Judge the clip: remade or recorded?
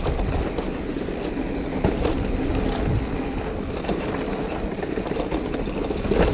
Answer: recorded